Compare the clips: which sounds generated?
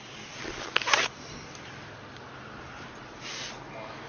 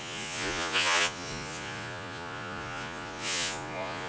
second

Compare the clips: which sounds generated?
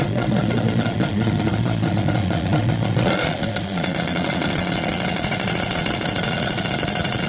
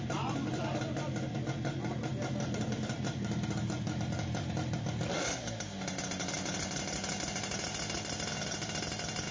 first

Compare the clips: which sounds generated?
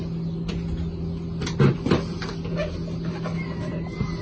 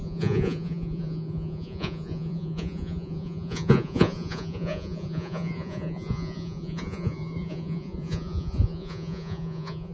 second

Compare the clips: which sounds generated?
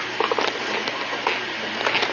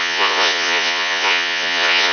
second